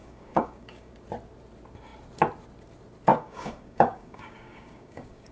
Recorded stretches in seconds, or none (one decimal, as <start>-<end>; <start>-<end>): 0.9-3.1